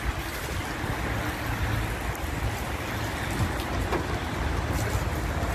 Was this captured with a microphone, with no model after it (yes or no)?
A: yes